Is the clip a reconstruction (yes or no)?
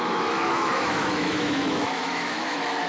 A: yes